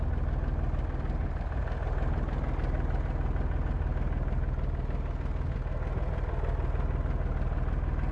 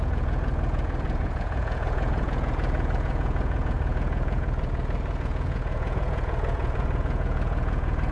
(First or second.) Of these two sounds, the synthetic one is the second